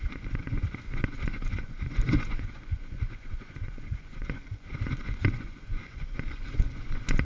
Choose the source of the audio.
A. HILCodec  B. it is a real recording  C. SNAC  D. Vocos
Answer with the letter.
D